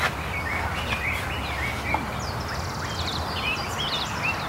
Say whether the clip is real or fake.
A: real